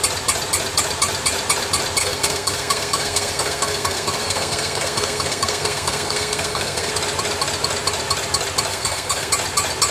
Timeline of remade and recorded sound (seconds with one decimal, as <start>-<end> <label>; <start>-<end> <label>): 0.0-2.0 recorded; 2.0-6.9 remade; 6.9-8.7 recorded; 8.7-9.3 remade; 9.3-9.9 recorded